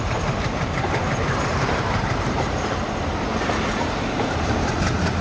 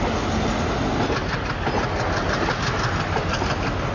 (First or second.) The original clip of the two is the second